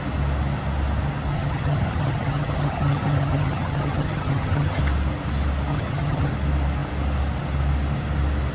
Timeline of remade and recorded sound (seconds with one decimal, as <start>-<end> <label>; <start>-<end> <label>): 0.0-1.3 recorded; 1.3-4.8 remade; 4.8-5.7 recorded; 5.7-6.3 remade; 6.3-8.5 recorded